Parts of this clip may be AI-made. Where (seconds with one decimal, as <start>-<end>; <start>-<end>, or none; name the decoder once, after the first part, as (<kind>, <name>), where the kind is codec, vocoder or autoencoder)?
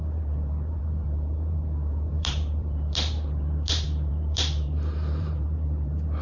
0.0-6.2 (vocoder, BigVGAN v2)